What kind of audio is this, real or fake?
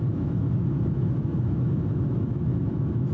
fake